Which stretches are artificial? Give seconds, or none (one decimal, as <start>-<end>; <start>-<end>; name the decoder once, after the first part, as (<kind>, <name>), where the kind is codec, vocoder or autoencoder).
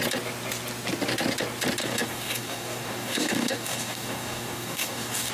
1.8-5.3 (codec, DAC)